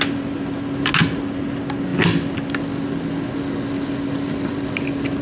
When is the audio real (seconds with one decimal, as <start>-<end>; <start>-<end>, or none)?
0.0-5.2